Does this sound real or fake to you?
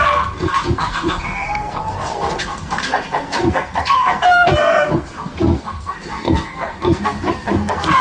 fake